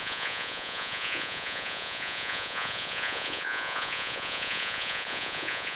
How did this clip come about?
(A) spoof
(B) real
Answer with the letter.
A